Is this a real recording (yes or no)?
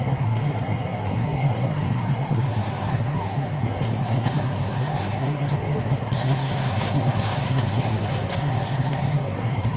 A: no